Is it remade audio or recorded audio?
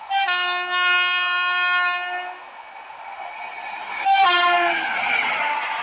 recorded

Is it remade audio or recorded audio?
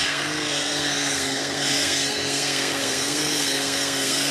remade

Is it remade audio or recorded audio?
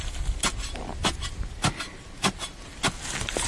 recorded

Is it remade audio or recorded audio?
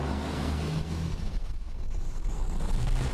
remade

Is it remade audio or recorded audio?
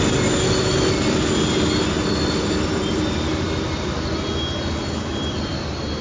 recorded